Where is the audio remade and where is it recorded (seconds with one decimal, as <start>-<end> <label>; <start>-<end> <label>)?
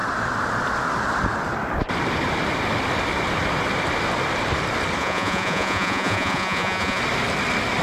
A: 0.0-5.0 recorded; 5.0-7.0 remade; 7.0-7.8 recorded